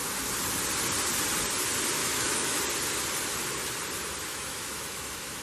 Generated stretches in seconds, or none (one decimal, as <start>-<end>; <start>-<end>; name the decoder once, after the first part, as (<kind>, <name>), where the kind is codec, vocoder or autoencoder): 2.0-2.6 (autoencoder, DAC-VAE); 4.3-5.4

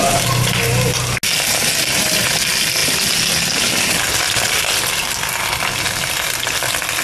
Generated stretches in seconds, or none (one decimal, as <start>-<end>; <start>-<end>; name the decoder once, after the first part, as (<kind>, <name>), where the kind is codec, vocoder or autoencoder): none

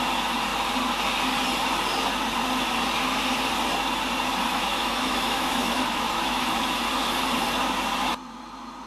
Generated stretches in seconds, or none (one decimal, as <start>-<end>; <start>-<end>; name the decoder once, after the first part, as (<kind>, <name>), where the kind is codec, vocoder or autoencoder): 4.5-6.6 (autoencoder, DAC-VAE)

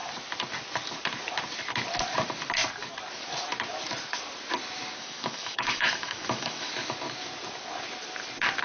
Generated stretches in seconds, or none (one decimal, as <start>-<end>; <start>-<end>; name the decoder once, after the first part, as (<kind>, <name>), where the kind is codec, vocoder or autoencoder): 5.0-6.7 (autoencoder, DAC-VAE)

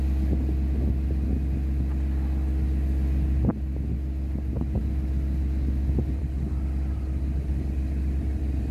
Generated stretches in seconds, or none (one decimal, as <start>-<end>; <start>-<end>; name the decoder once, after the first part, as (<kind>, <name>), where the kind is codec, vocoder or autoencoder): none

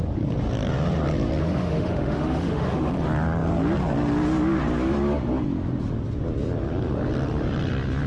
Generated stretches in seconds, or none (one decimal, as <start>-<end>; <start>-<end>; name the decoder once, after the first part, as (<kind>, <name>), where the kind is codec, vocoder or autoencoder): 1.4-2.9 (autoencoder, DAC-VAE)